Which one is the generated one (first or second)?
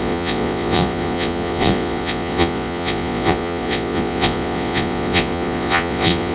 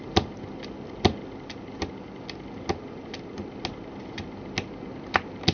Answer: first